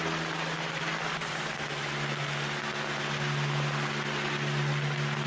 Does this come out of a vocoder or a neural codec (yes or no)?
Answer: no